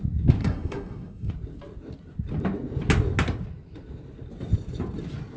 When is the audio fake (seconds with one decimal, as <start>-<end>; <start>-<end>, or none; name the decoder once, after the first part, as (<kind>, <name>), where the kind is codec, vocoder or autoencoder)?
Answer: 0.4-1.3 (codec, SNAC)